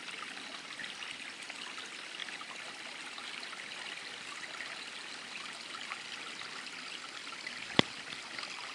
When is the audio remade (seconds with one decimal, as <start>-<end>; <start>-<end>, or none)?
2.2-3.2